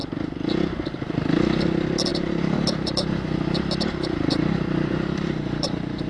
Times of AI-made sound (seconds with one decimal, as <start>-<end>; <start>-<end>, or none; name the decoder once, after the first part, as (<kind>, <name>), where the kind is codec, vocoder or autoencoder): 2.1-6.1 (vocoder, BigVGAN v2)